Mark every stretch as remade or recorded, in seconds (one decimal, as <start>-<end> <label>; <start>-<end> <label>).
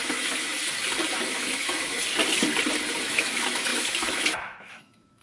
0.0-0.5 remade; 0.5-1.1 recorded; 1.1-2.0 remade; 2.0-3.0 recorded; 3.0-5.2 remade